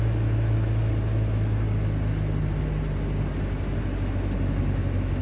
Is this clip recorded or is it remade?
recorded